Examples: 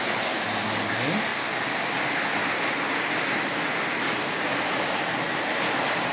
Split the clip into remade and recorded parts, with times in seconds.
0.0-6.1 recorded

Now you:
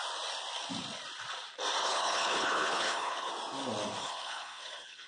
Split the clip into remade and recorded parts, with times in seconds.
0.0-1.8 recorded; 1.8-3.3 remade; 3.3-4.0 recorded; 4.0-5.1 remade